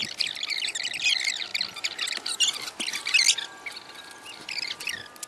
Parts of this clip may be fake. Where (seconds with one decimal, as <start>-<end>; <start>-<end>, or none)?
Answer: none